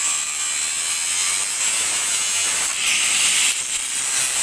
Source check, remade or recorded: recorded